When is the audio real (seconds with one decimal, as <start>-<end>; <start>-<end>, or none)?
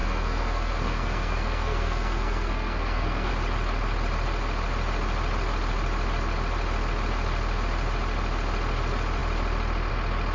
3.3-10.3